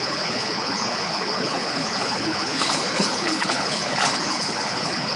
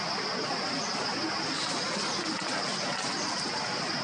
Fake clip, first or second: first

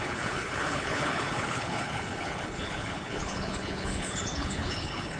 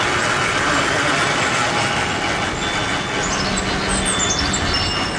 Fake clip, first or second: first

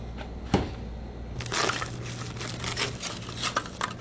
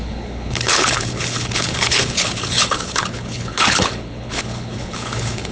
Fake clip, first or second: second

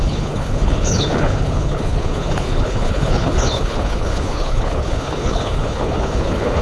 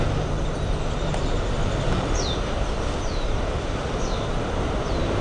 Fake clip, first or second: first